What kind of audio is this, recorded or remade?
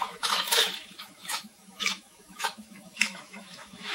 remade